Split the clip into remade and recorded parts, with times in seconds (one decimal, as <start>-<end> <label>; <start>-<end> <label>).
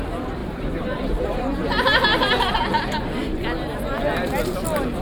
0.0-0.4 recorded; 0.4-2.5 remade; 2.5-5.0 recorded